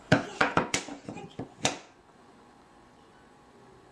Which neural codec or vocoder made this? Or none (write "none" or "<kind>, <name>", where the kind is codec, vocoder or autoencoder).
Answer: vocoder, Vocos